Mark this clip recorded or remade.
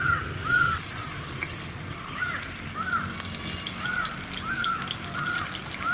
recorded